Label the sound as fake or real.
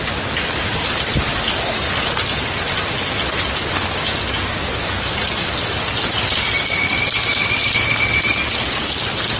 real